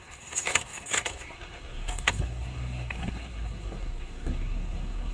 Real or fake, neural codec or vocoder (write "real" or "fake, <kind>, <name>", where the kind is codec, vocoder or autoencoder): fake, codec, SNAC